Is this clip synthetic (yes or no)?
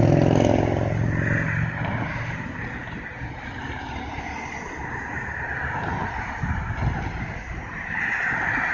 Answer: no